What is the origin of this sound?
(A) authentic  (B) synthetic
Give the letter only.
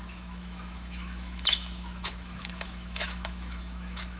B